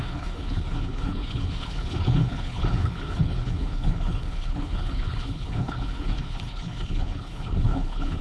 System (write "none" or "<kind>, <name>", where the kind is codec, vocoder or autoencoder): codec, HILCodec